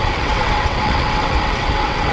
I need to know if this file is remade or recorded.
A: remade